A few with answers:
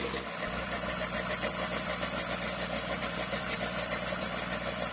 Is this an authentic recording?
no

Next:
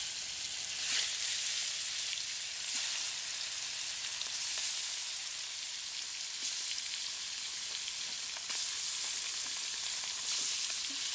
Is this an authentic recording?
yes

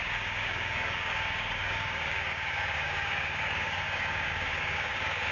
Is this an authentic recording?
no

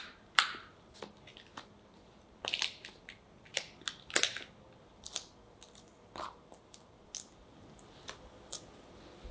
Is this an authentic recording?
yes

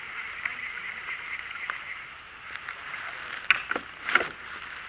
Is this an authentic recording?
yes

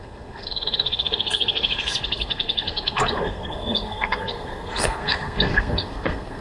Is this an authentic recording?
no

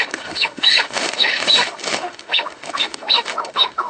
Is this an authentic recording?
no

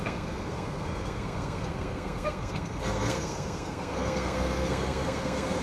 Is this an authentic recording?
no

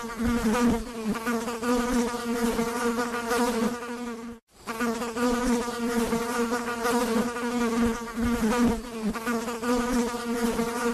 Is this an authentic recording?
yes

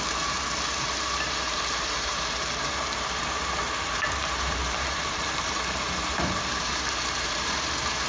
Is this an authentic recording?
no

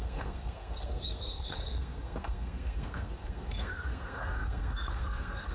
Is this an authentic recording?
no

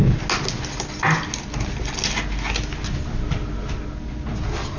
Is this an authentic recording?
yes